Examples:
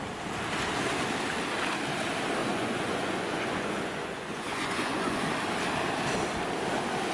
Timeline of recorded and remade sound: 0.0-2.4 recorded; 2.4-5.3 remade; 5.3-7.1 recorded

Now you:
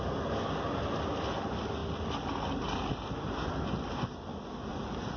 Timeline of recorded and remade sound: 0.0-5.2 recorded

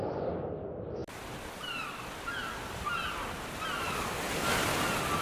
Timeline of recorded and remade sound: 0.0-5.2 recorded

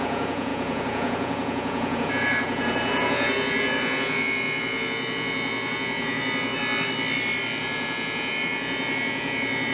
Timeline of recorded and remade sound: 0.0-6.6 remade; 6.6-7.6 recorded; 7.6-9.7 remade